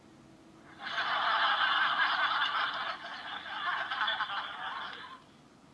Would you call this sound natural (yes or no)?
yes